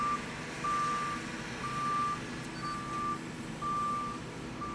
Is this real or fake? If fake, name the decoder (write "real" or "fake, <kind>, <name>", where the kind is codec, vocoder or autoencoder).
real